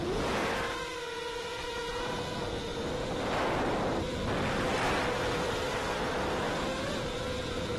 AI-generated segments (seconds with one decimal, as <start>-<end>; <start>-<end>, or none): 0.0-0.4; 1.7-2.7; 6.9-7.8